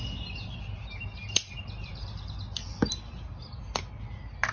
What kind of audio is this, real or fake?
real